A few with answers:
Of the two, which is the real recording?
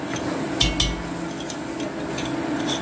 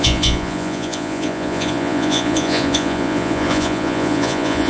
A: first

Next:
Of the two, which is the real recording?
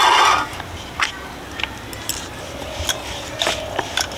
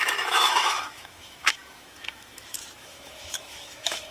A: first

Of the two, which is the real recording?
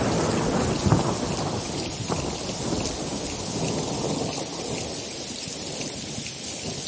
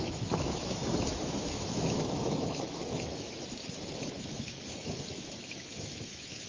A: first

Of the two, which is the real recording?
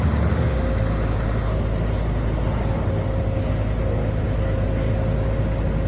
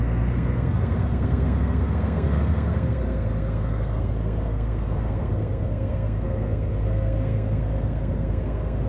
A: first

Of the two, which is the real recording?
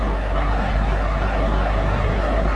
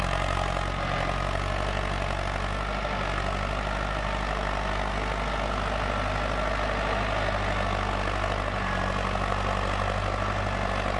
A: second